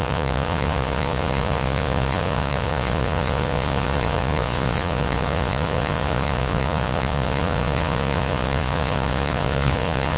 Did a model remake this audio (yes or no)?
yes